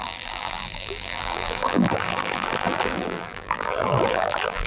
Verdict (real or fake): fake